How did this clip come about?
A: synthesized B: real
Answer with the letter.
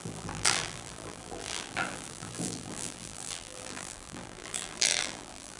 A